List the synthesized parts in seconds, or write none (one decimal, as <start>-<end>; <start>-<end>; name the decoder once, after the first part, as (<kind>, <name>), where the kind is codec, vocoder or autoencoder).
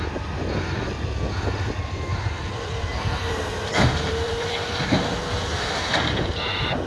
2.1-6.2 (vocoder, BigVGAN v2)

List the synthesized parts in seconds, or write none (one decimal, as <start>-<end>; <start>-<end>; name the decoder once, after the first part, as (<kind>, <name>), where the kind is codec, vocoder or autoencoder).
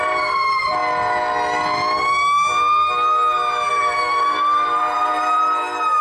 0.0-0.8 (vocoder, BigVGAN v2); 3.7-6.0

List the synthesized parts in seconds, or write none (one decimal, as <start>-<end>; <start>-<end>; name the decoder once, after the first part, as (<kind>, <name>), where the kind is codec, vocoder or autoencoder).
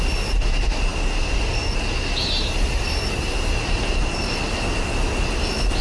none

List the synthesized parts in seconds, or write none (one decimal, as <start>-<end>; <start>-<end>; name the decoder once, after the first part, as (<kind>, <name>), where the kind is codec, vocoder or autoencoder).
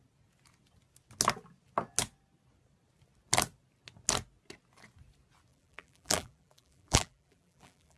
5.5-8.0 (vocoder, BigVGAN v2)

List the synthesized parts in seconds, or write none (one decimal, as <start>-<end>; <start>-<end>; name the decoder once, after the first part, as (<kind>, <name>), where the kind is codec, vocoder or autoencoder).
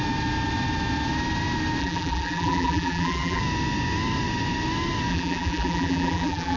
1.8-3.4 (vocoder, BigVGAN v2); 5.1-6.6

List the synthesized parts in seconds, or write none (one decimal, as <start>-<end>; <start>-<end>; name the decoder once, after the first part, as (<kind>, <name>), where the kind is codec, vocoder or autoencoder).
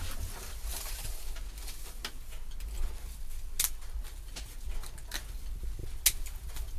0.7-1.2 (vocoder, BigVGAN v2)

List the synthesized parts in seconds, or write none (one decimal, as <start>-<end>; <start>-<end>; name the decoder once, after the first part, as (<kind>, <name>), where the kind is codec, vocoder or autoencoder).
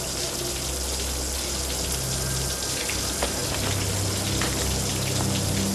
none